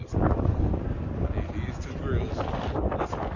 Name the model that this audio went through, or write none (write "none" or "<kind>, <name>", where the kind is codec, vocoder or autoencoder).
none